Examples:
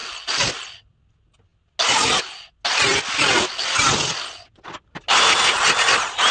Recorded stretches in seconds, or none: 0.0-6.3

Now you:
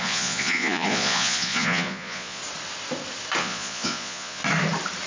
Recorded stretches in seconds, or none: 2.4-3.4; 4.4-5.1

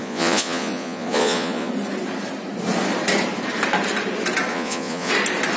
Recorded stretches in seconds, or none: 1.7-4.5; 5.1-5.6

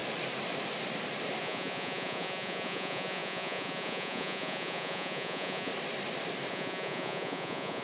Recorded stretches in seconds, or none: 0.0-1.4; 5.7-6.5